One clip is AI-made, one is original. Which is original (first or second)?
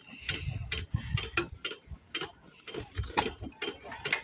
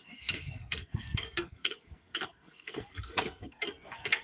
first